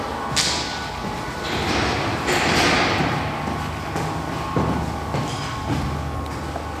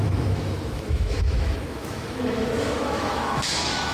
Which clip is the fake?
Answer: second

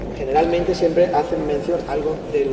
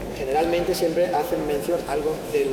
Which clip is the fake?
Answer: second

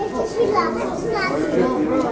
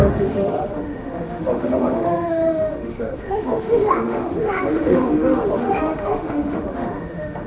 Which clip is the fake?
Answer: second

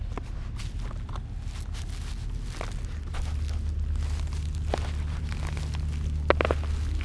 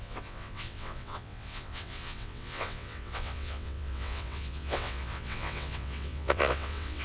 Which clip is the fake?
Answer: second